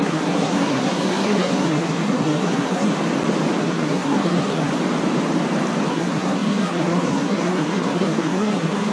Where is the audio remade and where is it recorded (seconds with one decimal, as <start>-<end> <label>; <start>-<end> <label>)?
0.0-2.9 remade; 2.9-3.6 recorded; 3.6-4.7 remade; 4.7-5.9 recorded; 5.9-8.9 remade